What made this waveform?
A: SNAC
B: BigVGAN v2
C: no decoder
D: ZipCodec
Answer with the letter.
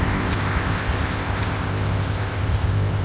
D